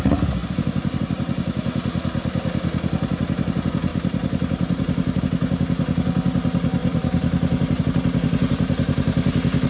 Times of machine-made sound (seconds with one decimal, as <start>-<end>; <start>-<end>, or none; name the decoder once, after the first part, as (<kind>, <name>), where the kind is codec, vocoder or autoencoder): 3.9-5.2 (vocoder, BigVGAN v2); 6.8-7.8